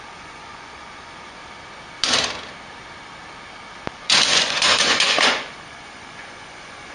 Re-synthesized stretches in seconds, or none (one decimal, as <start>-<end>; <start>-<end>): 0.0-1.4; 3.9-6.9